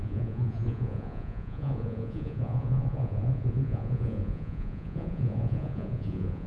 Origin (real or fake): fake